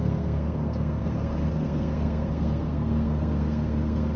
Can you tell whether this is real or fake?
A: fake